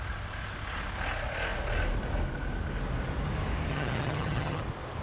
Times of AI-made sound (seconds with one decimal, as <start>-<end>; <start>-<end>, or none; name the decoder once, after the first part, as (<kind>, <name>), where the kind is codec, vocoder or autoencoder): 3.7-4.6 (vocoder, HiFi-GAN)